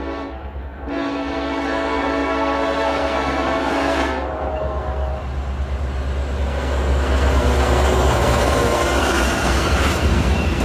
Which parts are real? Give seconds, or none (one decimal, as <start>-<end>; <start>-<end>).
5.1-6.4